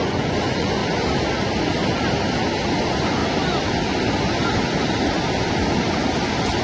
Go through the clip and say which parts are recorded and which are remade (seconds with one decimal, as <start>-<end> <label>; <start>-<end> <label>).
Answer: 0.0-0.8 remade; 0.8-2.7 recorded; 2.7-3.2 remade; 3.2-6.6 recorded

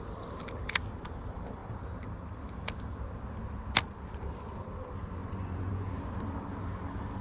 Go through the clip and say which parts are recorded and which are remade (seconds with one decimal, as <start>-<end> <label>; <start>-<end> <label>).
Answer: 0.0-5.2 recorded; 5.2-5.9 remade; 5.9-7.2 recorded

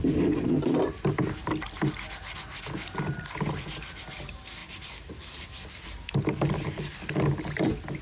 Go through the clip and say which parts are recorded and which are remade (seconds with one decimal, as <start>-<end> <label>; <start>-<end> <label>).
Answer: 0.0-8.0 recorded

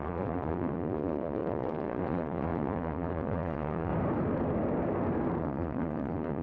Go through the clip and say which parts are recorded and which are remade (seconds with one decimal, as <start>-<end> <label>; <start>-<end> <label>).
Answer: 0.0-3.9 remade; 3.9-5.4 recorded; 5.4-6.4 remade

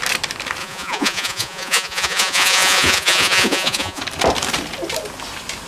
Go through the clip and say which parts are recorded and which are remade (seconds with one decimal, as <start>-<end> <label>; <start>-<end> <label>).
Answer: 0.0-0.6 recorded; 0.6-4.0 remade; 4.0-5.7 recorded

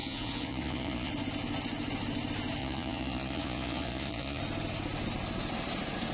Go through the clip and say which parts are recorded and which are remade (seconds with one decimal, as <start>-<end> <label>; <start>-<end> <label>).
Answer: 0.0-1.1 remade; 1.1-2.6 recorded; 2.6-4.4 remade; 4.4-6.1 recorded

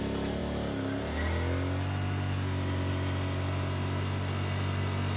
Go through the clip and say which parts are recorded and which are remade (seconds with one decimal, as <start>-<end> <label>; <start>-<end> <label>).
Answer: 0.0-5.2 recorded

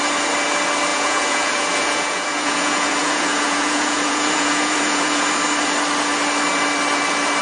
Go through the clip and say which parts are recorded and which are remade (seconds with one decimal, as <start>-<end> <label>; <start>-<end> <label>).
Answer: 0.0-0.9 recorded; 0.9-5.3 remade; 5.3-7.4 recorded